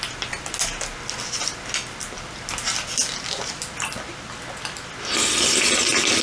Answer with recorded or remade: recorded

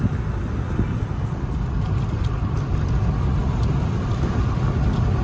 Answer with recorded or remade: remade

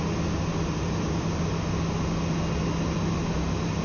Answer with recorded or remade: recorded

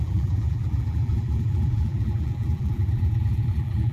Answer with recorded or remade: remade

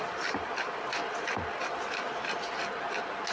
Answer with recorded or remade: recorded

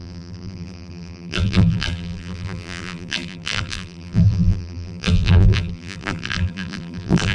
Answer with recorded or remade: remade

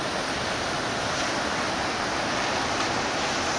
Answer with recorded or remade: recorded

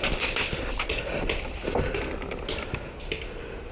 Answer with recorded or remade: recorded